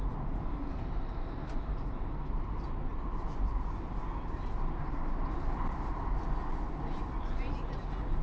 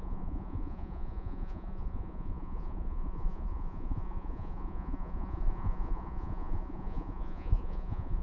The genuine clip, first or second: first